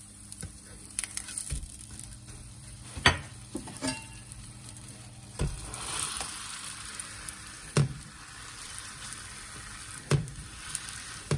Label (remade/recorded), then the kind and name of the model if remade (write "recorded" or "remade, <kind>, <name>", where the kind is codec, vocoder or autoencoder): remade, vocoder, BigVGAN v2